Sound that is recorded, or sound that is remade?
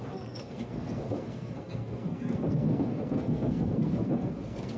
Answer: remade